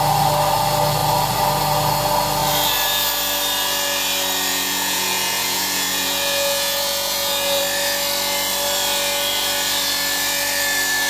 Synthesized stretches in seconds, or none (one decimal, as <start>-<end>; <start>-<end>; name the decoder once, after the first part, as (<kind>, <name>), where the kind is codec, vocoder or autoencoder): 4.5-7.6 (vocoder, Vocos)